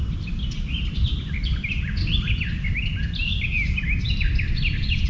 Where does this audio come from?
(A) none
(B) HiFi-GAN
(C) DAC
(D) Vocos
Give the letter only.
A